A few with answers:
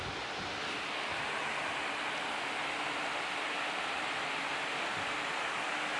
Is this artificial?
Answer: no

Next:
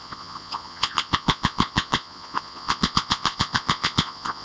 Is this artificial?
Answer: yes